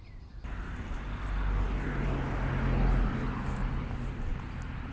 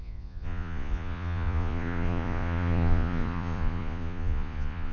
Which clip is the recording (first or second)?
first